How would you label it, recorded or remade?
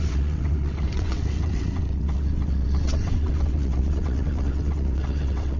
remade